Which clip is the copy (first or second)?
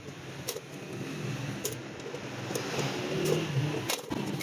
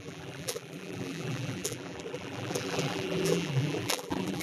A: second